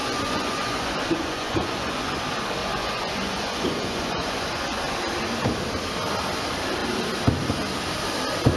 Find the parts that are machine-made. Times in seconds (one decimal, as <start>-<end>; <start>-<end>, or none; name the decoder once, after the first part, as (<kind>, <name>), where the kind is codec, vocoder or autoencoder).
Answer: 0.0-2.2 (vocoder, Vocos); 2.6-4.8